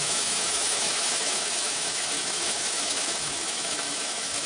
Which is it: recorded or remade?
remade